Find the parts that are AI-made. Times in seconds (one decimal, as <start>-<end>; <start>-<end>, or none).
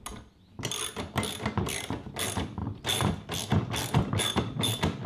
none